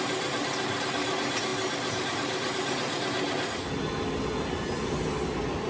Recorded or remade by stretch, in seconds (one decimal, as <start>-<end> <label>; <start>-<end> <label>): 0.0-5.7 recorded